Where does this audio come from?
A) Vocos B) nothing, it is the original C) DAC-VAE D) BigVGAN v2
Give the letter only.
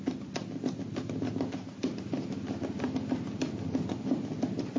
B